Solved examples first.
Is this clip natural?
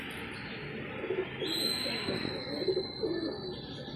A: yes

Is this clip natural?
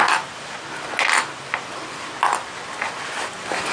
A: yes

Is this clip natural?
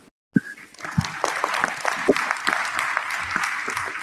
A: yes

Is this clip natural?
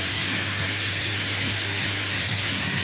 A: no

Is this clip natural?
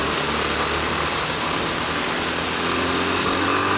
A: yes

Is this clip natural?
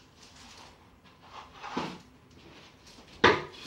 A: yes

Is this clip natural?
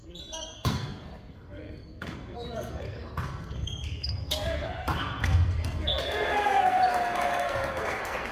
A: no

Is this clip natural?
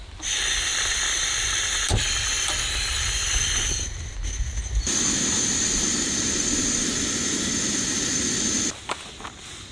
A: yes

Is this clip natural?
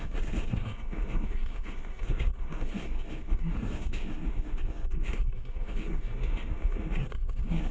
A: no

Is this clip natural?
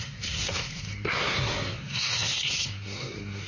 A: no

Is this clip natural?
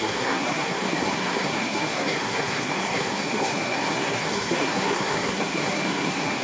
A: no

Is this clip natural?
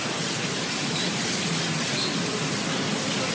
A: yes